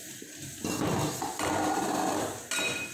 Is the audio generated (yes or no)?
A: no